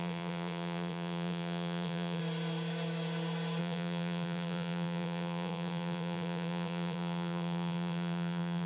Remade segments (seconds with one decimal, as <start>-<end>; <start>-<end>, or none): 0.0-2.2; 3.6-8.7